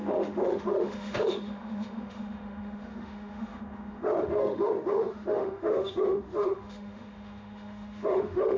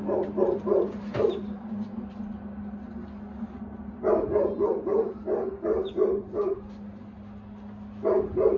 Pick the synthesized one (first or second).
first